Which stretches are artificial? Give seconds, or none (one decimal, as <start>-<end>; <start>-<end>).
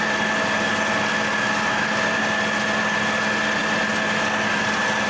none